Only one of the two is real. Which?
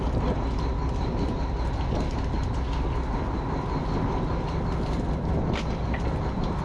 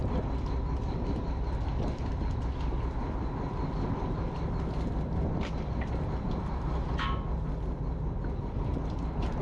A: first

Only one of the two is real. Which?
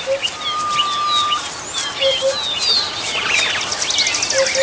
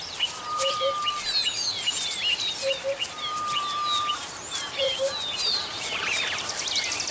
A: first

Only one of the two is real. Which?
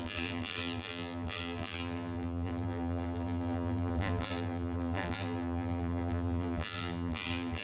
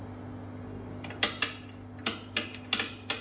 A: second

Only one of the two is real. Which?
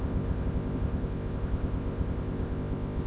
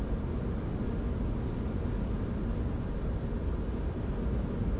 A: second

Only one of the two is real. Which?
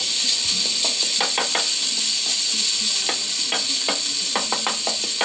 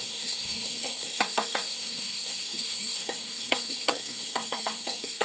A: first